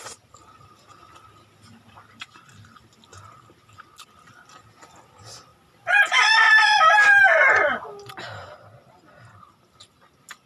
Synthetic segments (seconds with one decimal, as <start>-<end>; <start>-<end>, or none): 5.5-8.1